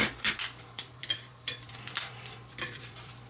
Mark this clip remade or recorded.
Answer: remade